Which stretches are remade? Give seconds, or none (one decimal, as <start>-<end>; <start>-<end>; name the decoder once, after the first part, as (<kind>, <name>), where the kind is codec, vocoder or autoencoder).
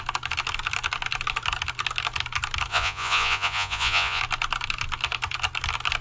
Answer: 2.7-4.2 (vocoder, Vocos)